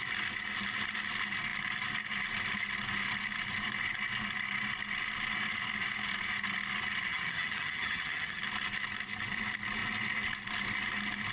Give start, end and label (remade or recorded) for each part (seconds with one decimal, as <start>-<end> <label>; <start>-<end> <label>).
0.0-7.1 recorded; 7.1-8.4 remade; 8.4-11.3 recorded